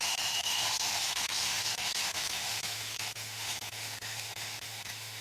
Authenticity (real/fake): fake